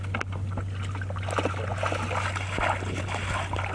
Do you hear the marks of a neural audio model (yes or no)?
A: no